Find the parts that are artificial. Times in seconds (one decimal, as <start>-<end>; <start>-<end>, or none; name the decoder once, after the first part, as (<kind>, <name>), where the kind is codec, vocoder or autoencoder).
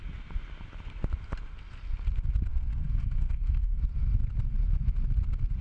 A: 2.5-3.8 (codec, SNAC)